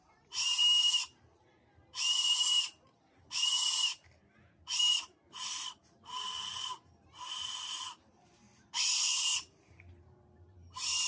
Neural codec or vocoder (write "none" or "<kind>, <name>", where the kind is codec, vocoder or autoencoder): vocoder, BigVGAN v2